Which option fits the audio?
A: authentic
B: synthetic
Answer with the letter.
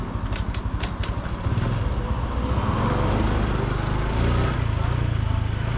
A